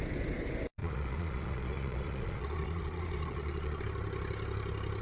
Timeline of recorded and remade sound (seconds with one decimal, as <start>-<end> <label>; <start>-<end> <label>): 0.0-0.8 recorded; 0.8-3.8 remade; 3.8-5.0 recorded